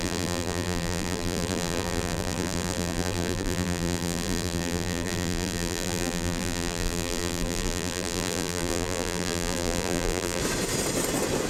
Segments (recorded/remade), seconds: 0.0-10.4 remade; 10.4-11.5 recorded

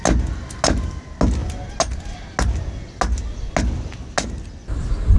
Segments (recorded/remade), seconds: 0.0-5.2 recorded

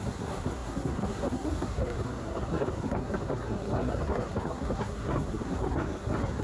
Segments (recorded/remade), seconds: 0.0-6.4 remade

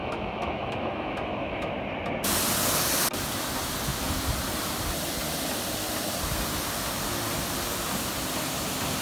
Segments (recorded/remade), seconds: 0.0-1.7 remade; 1.7-9.0 recorded

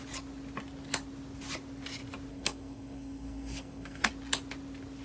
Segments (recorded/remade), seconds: 0.0-2.3 recorded; 2.3-4.1 remade; 4.1-5.0 recorded

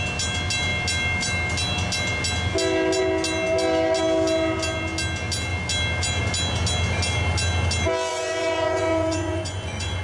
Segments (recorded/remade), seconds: 0.0-8.1 recorded; 8.1-10.0 remade

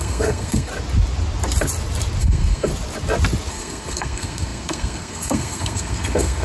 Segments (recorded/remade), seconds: 0.0-0.7 remade; 0.7-2.2 recorded; 2.2-2.7 remade; 2.7-3.5 recorded; 3.5-6.4 remade

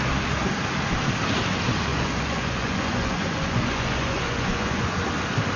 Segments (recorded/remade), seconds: 0.0-1.9 recorded; 1.9-5.0 remade; 5.0-5.6 recorded